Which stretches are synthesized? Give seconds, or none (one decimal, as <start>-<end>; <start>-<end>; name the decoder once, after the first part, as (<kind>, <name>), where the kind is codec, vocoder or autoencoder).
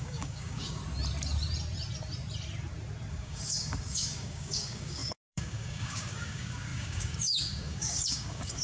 0.0-0.8 (codec, DAC); 3.1-8.6